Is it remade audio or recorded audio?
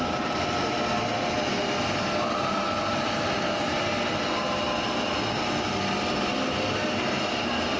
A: recorded